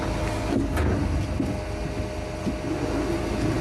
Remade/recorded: recorded